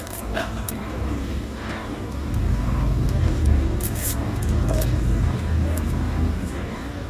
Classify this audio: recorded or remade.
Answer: remade